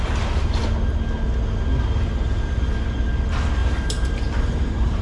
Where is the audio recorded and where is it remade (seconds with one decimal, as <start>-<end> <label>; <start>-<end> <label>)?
0.0-3.6 recorded; 3.6-5.0 remade